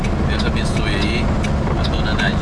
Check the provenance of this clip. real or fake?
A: real